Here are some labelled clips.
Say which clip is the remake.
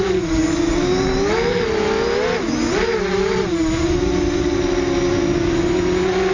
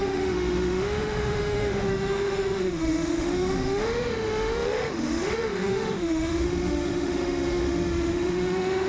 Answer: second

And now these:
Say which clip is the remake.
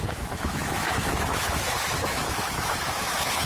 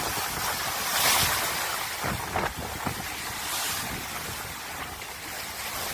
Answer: first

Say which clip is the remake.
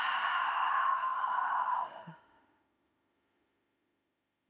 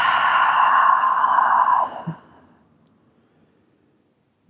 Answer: first